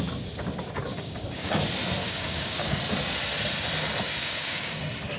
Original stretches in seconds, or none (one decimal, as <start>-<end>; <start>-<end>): 0.0-0.9; 1.6-2.0; 2.8-4.2; 4.8-5.2